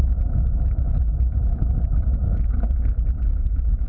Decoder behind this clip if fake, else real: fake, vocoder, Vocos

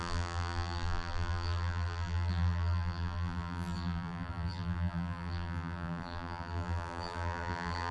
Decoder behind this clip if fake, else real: fake, vocoder, BigVGAN v2